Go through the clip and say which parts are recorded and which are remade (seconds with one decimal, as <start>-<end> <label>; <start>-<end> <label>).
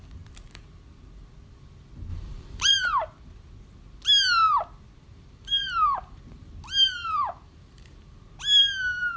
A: 0.0-2.1 recorded; 2.1-2.7 remade; 2.7-5.1 recorded; 5.1-6.2 remade; 6.2-7.0 recorded; 7.0-8.2 remade; 8.2-9.2 recorded